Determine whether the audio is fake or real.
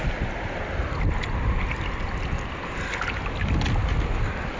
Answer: real